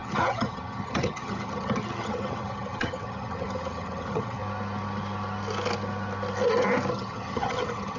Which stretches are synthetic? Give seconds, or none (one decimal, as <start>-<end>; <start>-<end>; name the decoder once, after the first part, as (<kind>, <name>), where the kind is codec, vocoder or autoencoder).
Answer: 0.0-4.4 (vocoder, HiFi-GAN); 6.9-8.0